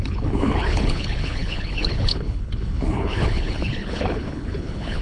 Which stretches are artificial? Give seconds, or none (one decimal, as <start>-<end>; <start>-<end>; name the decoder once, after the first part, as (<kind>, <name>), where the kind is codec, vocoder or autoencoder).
0.0-5.0 (codec, HILCodec)